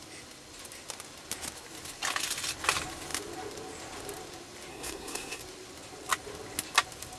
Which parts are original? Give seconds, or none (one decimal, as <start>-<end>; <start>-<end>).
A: 0.0-4.7; 5.4-7.2